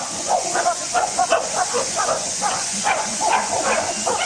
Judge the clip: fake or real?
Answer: fake